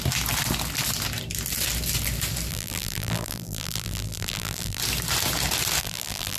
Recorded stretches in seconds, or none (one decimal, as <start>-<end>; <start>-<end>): 0.0-2.5; 4.8-5.8